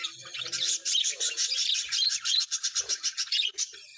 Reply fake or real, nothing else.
fake